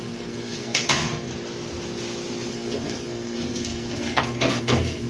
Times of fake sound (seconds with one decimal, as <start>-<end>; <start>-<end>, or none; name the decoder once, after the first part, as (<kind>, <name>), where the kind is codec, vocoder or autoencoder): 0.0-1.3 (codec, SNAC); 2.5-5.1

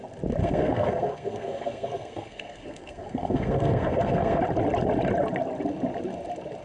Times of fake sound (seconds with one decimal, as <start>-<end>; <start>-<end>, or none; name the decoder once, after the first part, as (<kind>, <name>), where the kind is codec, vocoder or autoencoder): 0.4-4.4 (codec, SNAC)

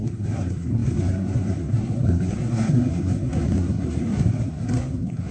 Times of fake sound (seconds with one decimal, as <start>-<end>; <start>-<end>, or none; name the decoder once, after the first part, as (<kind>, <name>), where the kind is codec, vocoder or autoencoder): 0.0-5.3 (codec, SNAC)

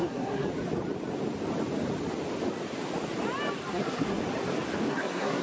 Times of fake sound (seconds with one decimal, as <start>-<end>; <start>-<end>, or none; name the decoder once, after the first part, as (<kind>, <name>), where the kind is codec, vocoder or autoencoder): 0.0-0.5 (codec, SNAC); 3.7-4.2; 4.9-5.4

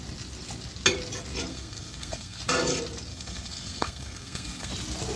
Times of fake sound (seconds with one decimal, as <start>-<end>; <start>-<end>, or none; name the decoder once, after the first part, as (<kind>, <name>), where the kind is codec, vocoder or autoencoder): 1.5-2.4 (codec, SNAC); 3.1-4.7

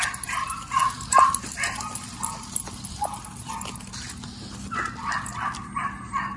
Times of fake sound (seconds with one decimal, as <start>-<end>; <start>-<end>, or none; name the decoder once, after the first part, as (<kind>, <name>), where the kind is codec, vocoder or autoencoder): none

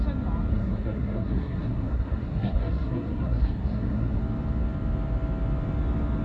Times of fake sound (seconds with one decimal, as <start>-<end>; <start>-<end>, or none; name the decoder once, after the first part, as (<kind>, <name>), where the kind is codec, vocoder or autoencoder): 0.5-4.2 (codec, SNAC)